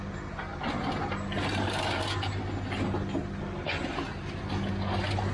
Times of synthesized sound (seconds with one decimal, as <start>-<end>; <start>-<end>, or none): none